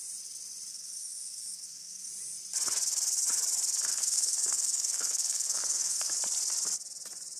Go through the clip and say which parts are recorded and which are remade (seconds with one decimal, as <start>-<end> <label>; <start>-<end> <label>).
0.0-0.7 recorded; 0.7-2.1 remade; 2.1-3.9 recorded; 3.9-6.1 remade; 6.1-7.4 recorded